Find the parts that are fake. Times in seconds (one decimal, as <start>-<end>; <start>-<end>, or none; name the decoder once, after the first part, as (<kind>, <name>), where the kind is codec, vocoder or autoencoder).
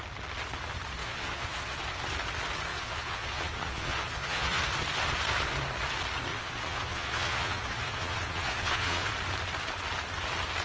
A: 1.0-1.8 (vocoder, Vocos); 2.7-4.6; 6.3-9.1